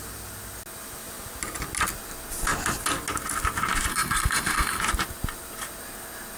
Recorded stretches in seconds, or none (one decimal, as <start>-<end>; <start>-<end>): 0.0-3.9; 4.8-6.4

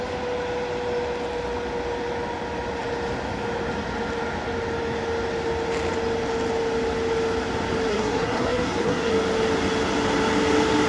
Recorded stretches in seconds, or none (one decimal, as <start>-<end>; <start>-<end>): 0.0-7.9; 9.1-10.9

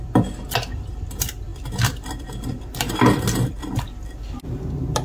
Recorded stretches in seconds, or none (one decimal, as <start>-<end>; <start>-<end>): none